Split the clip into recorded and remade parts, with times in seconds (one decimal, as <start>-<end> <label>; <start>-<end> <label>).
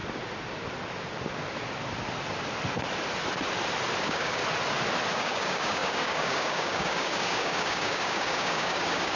0.0-4.0 recorded; 4.0-4.4 remade; 4.4-5.1 recorded; 5.1-9.2 remade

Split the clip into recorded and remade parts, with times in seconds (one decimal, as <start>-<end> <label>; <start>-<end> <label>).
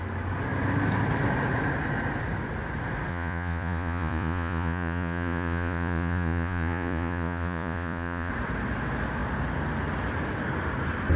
0.0-3.1 recorded; 3.1-8.3 remade; 8.3-11.2 recorded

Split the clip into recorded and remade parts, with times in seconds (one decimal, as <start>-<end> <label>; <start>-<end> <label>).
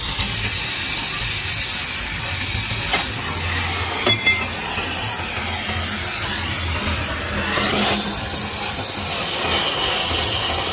0.0-10.7 recorded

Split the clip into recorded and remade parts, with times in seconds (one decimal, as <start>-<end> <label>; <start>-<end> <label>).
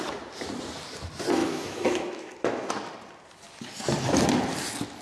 0.0-1.4 recorded; 1.4-2.7 remade; 2.7-5.0 recorded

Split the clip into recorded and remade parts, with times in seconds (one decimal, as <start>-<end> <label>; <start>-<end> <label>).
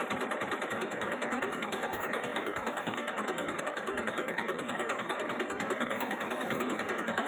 0.0-0.7 recorded; 0.7-7.3 remade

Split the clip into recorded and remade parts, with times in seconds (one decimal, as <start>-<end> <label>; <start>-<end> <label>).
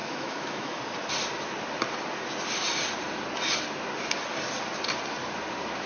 0.0-0.8 remade; 0.8-5.9 recorded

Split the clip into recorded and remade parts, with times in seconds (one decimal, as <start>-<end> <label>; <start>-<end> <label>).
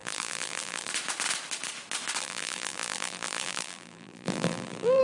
0.0-0.9 remade; 0.9-2.2 recorded; 2.2-5.0 remade